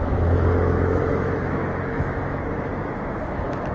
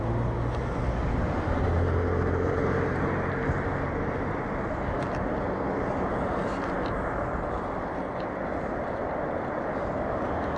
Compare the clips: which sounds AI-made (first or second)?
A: first